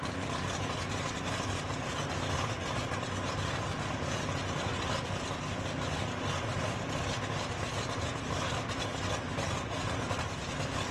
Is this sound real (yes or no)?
yes